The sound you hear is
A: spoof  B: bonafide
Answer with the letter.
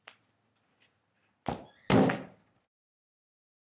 B